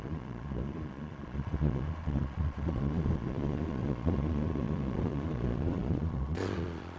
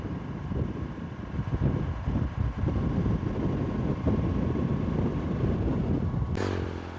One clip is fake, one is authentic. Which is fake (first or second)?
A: first